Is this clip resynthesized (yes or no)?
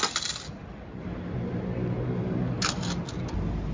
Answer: no